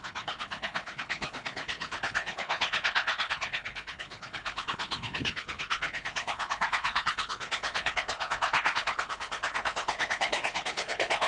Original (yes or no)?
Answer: no